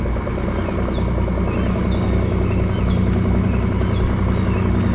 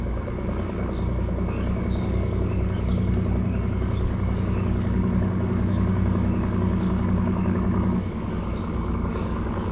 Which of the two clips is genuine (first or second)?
first